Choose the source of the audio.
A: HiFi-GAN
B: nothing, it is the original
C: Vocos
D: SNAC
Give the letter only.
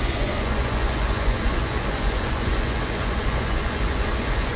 C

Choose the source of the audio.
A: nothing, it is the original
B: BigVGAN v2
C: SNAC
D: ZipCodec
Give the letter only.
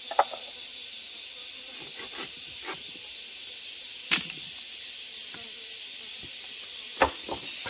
B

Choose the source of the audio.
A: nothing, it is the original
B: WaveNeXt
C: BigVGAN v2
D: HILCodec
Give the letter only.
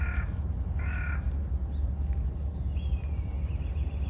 A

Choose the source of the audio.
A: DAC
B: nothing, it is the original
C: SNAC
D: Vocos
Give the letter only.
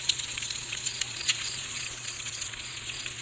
D